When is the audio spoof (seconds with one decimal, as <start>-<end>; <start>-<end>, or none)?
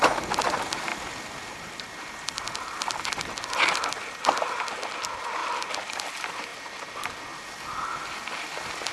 0.9-3.5